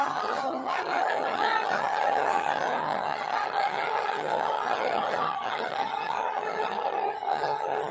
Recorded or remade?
remade